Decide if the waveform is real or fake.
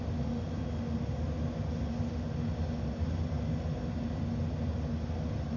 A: real